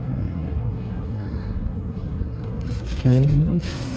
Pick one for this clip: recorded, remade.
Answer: remade